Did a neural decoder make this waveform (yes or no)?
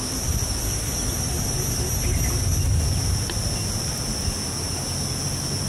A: no